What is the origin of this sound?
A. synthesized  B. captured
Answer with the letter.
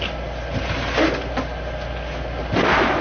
B